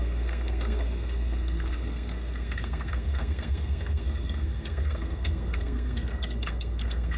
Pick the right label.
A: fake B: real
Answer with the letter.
A